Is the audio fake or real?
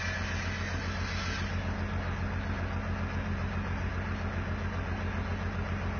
real